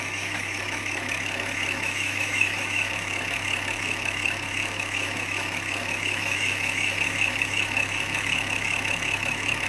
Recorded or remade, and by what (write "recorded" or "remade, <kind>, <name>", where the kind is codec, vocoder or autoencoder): remade, autoencoder, DAC-VAE